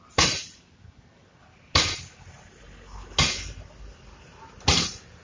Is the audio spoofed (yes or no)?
no